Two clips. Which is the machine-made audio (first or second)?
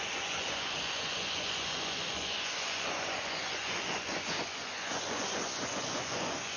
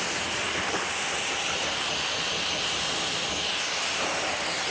first